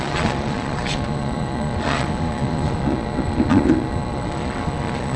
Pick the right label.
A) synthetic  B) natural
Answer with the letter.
A